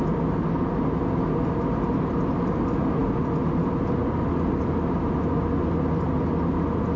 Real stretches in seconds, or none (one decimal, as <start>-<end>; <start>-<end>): 0.0-7.0